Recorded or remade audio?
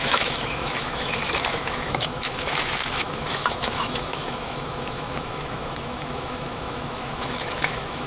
remade